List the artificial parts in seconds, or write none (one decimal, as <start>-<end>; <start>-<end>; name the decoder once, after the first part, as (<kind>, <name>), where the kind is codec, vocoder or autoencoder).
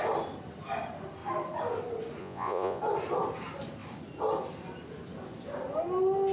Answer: 2.2-2.8 (vocoder, Vocos)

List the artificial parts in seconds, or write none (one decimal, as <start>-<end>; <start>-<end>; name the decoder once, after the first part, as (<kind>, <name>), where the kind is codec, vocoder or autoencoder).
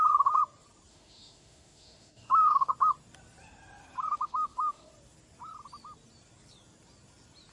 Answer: 0.9-2.7 (autoencoder, DAC-VAE); 4.1-4.9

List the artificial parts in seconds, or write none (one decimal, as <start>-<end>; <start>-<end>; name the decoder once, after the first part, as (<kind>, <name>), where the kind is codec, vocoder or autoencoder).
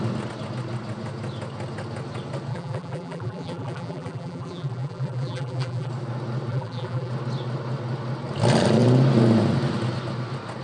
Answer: 2.5-5.9 (vocoder, BigVGAN v2); 6.5-7.1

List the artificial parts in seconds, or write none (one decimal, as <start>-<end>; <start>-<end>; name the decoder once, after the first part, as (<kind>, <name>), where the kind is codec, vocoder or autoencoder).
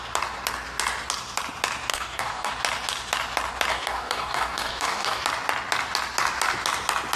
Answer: 1.9-2.5 (codec, DAC); 3.7-5.2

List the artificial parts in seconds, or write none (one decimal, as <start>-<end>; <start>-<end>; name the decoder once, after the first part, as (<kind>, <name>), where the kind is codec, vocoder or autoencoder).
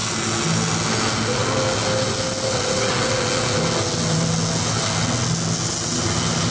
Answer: none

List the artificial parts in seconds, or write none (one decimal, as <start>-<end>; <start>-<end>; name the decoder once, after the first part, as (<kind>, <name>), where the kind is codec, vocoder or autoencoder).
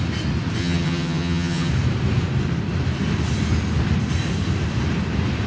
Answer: 0.6-1.7 (vocoder, HiFi-GAN)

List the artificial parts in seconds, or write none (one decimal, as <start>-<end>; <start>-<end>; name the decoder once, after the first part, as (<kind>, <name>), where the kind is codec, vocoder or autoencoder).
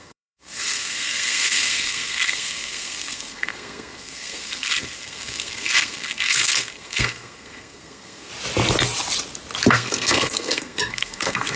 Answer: 0.0-8.3 (codec, SNAC); 9.7-11.6